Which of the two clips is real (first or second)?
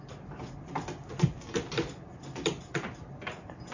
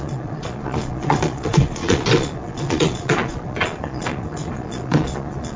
first